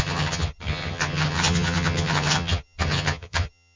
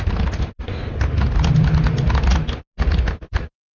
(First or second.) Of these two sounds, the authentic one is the second